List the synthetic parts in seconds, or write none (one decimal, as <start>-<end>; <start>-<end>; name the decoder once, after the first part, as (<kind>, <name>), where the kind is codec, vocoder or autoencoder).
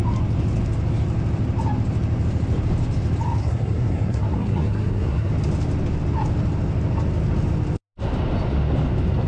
3.4-5.3 (codec, SNAC)